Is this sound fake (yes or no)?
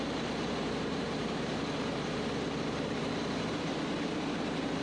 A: yes